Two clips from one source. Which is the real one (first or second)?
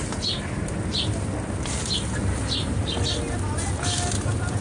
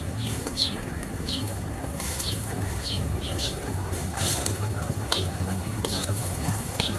first